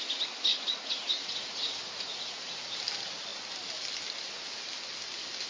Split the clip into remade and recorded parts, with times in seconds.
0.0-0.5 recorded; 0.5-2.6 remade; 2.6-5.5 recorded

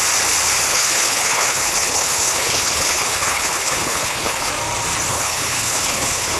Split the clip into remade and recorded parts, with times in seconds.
0.0-0.7 recorded; 0.7-4.5 remade; 4.5-5.1 recorded; 5.1-6.4 remade